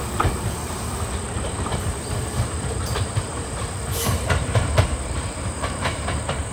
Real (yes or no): no